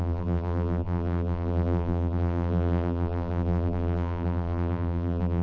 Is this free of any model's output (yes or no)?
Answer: no